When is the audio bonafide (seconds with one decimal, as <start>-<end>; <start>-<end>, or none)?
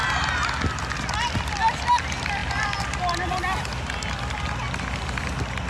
0.0-5.7